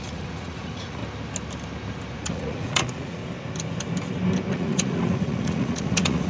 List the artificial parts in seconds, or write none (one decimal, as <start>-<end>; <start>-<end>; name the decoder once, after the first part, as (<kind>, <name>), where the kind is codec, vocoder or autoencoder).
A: 0.0-1.0 (vocoder, Vocos); 2.2-3.2; 4.5-6.3